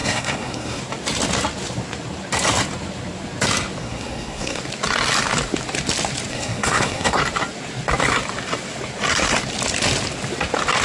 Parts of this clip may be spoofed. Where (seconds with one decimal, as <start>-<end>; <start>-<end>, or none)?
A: 0.0-0.8; 3.8-4.6; 6.3-7.2